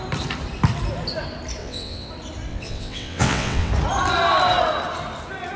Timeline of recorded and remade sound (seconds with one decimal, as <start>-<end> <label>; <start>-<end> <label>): 0.0-1.6 recorded; 1.6-2.1 remade; 2.1-2.5 recorded; 2.5-3.7 remade; 3.7-5.6 recorded